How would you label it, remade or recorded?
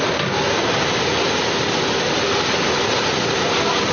recorded